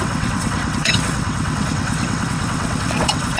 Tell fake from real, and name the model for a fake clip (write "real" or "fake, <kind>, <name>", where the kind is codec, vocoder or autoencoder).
fake, vocoder, WaveNeXt